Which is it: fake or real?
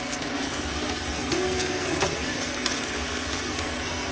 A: fake